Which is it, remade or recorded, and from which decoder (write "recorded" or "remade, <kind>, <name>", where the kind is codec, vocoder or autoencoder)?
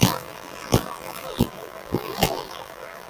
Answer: remade, vocoder, BigVGAN v2